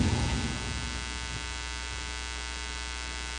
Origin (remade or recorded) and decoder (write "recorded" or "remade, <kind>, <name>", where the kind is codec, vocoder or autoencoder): recorded